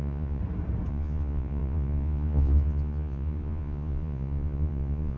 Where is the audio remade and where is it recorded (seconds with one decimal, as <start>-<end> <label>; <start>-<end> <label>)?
0.0-0.4 remade; 0.4-0.9 recorded; 0.9-5.2 remade